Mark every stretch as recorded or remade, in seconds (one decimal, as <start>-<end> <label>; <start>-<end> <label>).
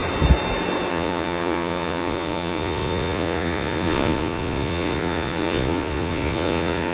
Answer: 0.0-0.9 recorded; 0.9-6.9 remade